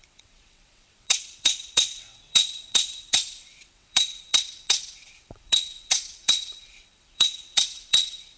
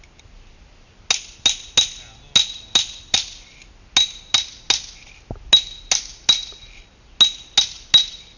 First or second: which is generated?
first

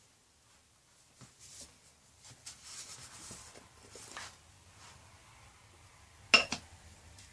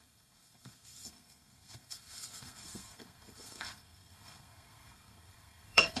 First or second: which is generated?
second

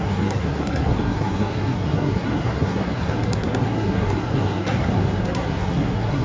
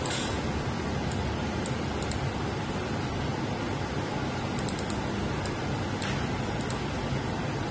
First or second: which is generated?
first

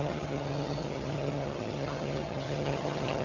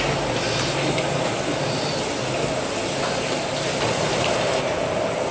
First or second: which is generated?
first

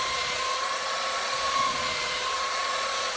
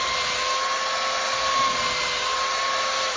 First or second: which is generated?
first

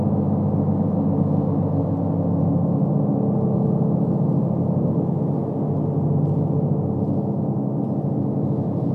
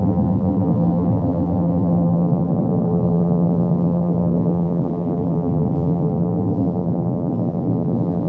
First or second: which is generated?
second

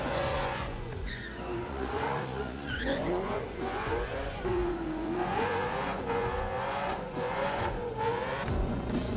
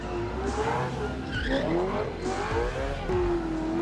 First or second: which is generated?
first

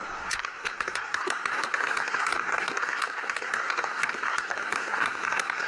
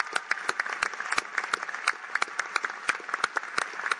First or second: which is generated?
first